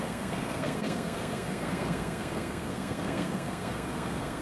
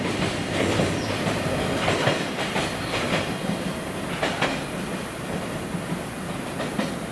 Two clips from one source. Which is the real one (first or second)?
second